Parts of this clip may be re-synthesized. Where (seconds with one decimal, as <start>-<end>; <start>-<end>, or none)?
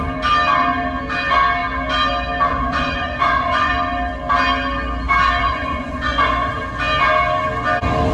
2.5-3.7; 5.4-6.6